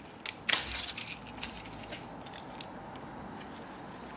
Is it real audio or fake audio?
real